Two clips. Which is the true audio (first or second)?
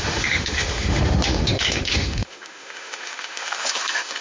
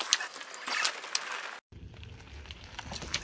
second